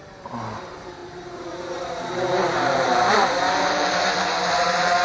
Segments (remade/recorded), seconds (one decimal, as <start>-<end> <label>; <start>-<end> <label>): 0.0-5.0 remade